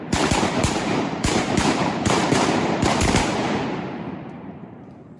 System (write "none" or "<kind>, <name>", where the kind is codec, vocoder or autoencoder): vocoder, BigVGAN v2